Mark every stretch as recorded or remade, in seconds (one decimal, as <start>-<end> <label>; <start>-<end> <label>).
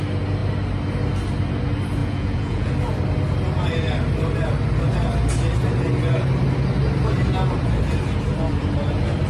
0.0-2.0 recorded; 2.0-2.7 remade; 2.7-9.3 recorded